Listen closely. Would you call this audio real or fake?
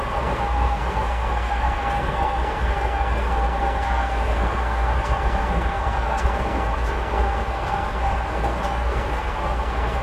fake